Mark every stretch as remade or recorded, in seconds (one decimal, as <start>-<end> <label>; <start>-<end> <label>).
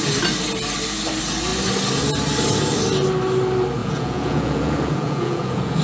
0.0-3.8 recorded; 3.8-5.8 remade